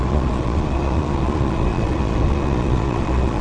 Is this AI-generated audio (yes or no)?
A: yes